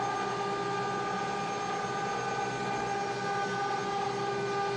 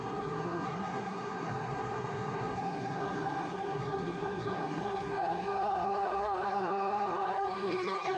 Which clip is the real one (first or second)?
first